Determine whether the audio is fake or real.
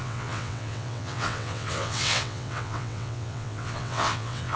fake